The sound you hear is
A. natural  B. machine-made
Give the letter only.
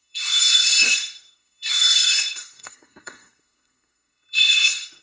B